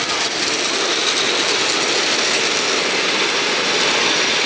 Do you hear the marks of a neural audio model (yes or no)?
no